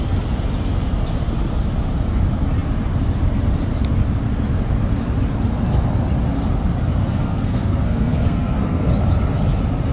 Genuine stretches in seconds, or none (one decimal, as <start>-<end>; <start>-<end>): 0.0-7.0; 8.9-9.9